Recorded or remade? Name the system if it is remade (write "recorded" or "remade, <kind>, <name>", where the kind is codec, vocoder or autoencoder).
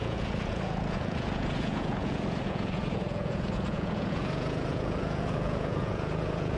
remade, vocoder, Vocos